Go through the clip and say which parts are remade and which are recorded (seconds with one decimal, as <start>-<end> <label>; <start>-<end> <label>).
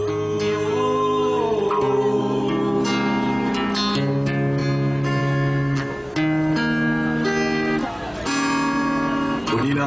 0.0-9.9 recorded